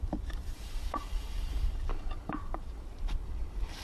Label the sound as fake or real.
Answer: fake